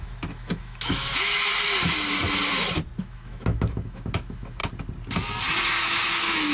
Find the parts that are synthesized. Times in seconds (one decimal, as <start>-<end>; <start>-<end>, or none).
0.0-1.5; 3.0-4.6; 5.8-6.5